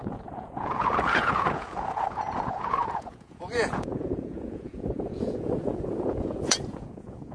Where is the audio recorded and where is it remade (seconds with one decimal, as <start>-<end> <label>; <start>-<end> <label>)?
0.0-7.3 remade